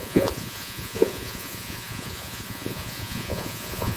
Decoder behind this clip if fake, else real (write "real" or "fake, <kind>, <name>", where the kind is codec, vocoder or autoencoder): fake, vocoder, Vocos